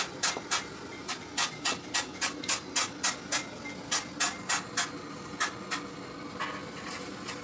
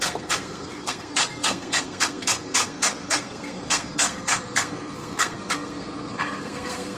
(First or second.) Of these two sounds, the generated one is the second